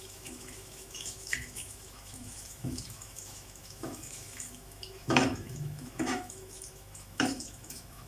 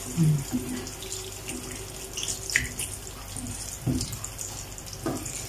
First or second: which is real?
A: second